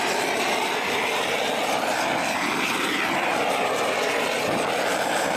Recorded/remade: recorded